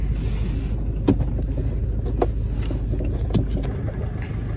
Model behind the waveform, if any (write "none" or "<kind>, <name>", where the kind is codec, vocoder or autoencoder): none